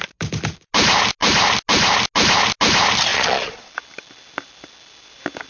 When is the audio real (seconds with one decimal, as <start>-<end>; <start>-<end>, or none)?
0.0-3.1; 3.7-5.5